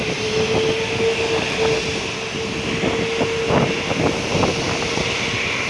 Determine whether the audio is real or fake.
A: real